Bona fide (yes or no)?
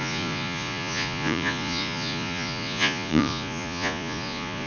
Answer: no